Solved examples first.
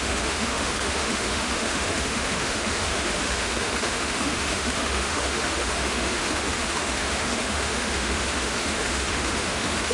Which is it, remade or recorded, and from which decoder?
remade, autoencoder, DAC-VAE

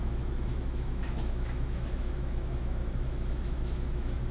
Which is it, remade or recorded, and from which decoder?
remade, autoencoder, DAC-VAE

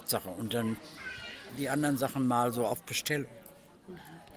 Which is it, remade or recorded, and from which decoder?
recorded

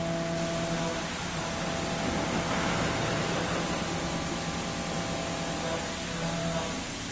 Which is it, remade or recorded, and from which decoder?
recorded